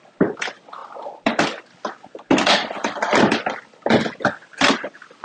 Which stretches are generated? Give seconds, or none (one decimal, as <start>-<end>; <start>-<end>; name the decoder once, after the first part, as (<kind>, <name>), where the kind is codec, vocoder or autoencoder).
none